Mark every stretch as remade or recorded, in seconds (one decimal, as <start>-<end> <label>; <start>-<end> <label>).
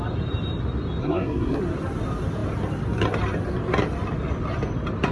0.0-1.0 recorded; 1.0-1.6 remade; 1.6-5.1 recorded